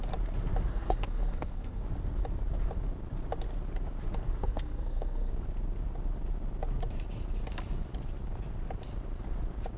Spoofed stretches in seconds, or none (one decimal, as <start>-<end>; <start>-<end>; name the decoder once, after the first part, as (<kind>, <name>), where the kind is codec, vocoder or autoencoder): 0.7-1.8 (codec, SNAC); 4.4-5.3